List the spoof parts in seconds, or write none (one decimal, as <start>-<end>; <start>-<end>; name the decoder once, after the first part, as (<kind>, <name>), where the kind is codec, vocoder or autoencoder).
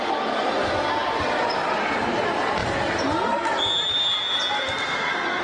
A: none